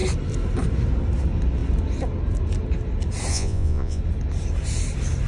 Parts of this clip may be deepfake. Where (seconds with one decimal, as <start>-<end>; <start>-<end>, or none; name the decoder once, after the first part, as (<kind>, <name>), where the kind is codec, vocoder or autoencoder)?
3.3-4.0 (vocoder, Vocos)